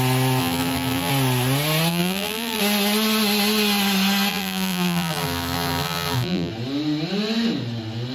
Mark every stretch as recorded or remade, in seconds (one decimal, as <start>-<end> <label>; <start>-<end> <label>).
0.0-0.4 recorded; 0.4-1.1 remade; 1.1-1.9 recorded; 1.9-2.6 remade; 2.6-4.3 recorded; 4.3-6.5 remade; 6.5-8.1 recorded